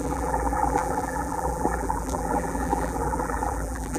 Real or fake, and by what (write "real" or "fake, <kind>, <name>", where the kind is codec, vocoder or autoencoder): fake, vocoder, BigVGAN v2